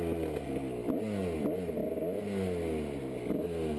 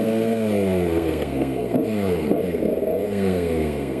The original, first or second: first